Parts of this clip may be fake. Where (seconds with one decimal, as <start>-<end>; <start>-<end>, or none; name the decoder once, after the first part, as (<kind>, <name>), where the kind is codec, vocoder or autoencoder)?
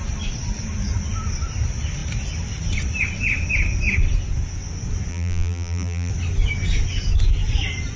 5.1-6.1 (vocoder, BigVGAN v2)